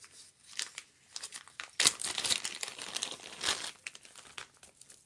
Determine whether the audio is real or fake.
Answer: real